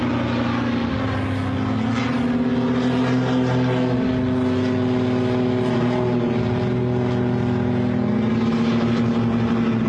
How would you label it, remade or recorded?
recorded